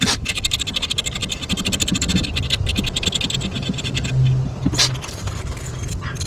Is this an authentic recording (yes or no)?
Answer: yes